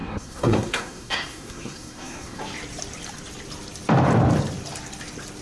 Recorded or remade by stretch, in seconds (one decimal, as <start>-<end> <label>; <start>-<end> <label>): 0.0-2.4 remade; 2.4-5.4 recorded